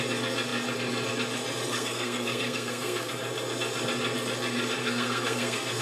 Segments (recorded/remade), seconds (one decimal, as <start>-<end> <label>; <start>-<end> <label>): 0.0-1.7 recorded; 1.7-3.1 remade; 3.1-4.8 recorded; 4.8-5.8 remade